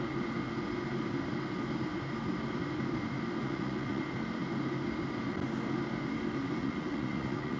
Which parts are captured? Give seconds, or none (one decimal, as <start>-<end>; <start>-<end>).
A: 0.0-3.4; 4.0-6.6